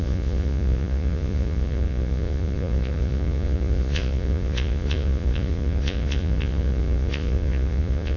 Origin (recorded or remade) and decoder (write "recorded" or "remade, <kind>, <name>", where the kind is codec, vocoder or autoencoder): remade, vocoder, Vocos